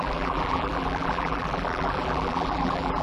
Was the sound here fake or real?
fake